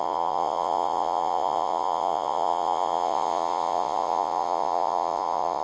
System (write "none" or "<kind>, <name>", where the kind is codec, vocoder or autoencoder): vocoder, Vocos